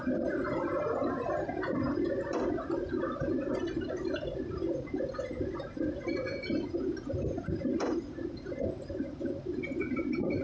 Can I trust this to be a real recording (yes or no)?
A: yes